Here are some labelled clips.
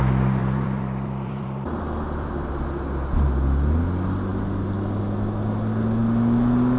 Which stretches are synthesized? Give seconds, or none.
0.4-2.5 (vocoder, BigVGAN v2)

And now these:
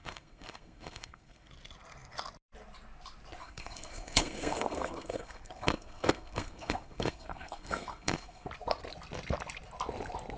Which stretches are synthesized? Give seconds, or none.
0.0-1.5 (codec, SNAC); 3.4-8.5

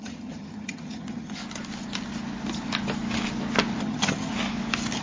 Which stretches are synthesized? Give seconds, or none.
0.0-1.4 (vocoder, HiFi-GAN); 3.8-4.3

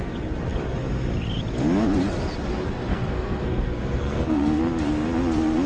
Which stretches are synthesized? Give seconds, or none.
2.9-4.6 (codec, SNAC)

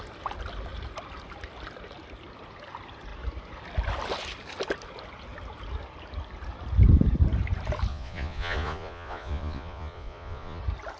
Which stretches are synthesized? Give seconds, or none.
7.9-10.6 (vocoder, Vocos)

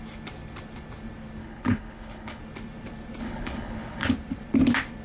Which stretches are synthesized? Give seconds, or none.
1.4-2.4 (codec, HILCodec); 3.2-4.1

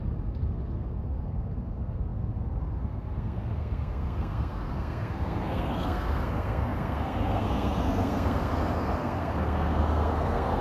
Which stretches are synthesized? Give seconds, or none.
0.0-10.6 (codec, SNAC)